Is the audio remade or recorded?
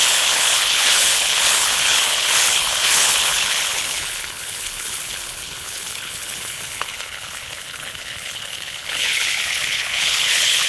remade